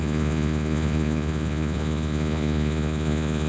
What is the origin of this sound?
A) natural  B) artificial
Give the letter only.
B